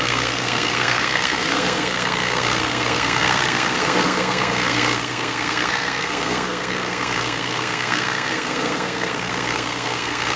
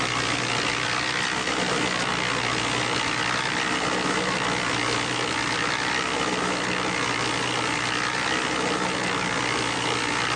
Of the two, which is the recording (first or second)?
second